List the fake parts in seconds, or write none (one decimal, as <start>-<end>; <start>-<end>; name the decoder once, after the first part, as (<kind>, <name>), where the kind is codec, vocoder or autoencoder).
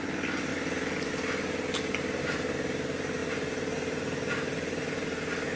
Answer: 0.5-1.1 (vocoder, BigVGAN v2); 3.2-5.6